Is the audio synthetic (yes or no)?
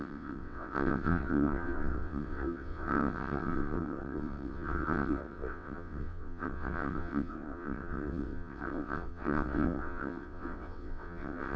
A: yes